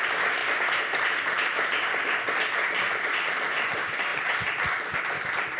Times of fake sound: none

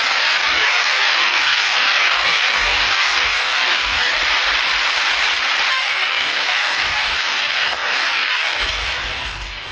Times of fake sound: 0.0-4.2; 5.7-9.7